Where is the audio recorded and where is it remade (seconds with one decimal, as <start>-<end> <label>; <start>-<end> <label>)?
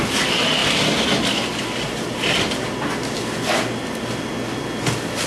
0.0-5.3 recorded